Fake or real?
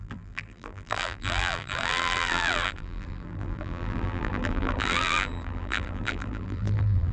fake